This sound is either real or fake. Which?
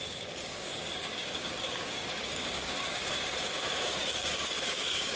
fake